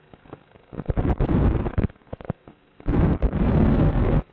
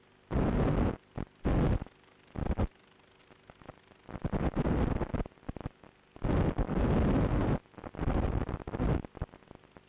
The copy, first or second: first